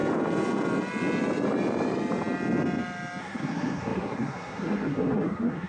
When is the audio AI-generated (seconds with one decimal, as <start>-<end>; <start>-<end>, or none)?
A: 3.2-5.7